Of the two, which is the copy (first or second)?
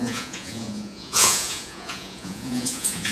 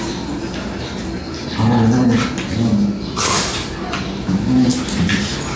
first